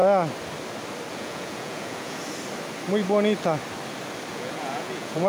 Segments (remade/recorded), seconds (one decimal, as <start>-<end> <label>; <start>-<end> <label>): 0.0-1.1 recorded; 1.1-2.2 remade; 2.2-4.3 recorded; 4.3-5.3 remade